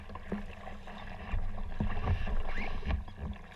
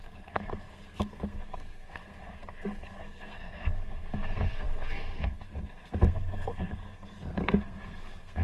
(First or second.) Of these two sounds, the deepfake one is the second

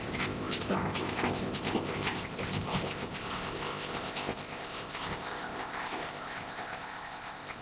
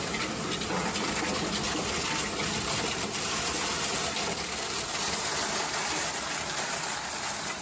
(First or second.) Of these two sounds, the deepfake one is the first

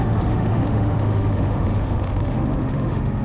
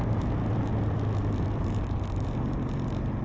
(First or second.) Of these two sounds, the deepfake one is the first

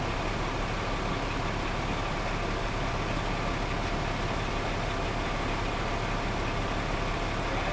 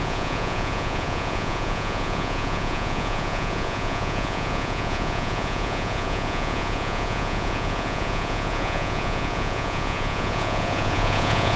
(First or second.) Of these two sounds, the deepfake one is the second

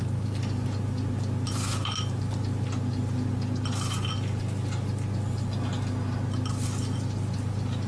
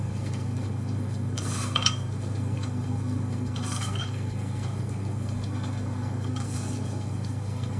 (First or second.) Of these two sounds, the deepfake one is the second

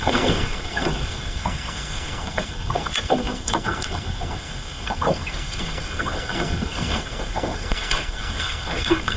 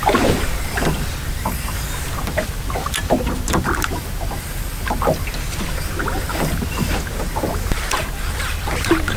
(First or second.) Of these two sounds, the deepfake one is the first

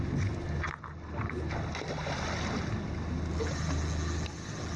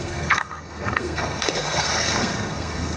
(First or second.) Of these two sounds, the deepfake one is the second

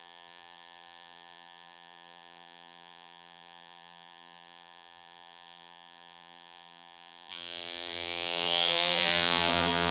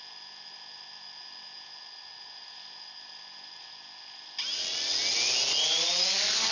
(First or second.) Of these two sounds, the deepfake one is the first